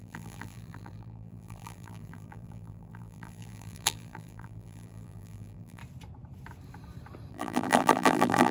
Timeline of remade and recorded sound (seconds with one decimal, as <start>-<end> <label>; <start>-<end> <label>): 0.0-5.8 remade; 5.8-7.3 recorded; 7.3-8.5 remade